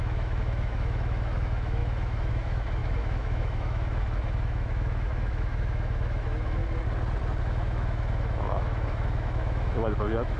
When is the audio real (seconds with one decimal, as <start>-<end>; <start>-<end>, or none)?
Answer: 6.6-7.4